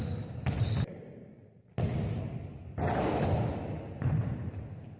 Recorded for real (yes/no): yes